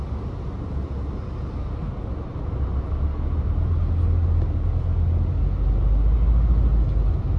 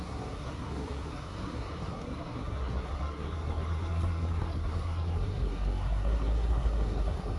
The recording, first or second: first